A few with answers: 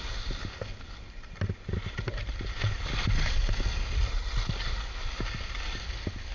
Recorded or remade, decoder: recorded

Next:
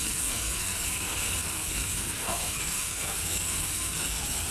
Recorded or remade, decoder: remade, codec, SNAC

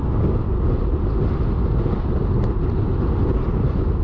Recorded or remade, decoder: recorded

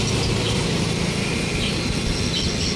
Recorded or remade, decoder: recorded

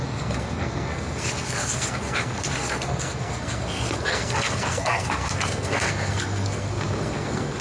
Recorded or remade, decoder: remade, codec, SNAC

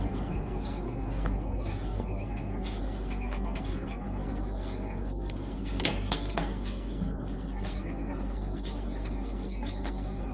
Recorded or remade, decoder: remade, codec, SNAC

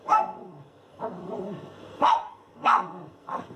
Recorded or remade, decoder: remade, codec, SNAC